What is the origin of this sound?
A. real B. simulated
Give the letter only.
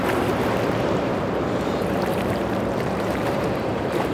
B